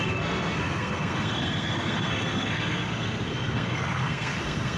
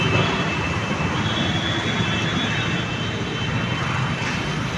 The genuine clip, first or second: second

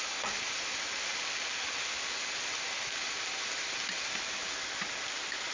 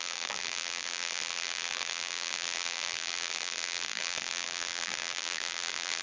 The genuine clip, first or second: first